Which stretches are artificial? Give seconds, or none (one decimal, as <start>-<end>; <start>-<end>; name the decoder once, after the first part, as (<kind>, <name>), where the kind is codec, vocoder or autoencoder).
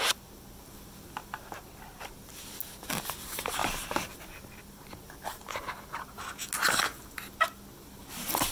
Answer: 1.9-2.5 (vocoder, BigVGAN v2); 3.6-5.5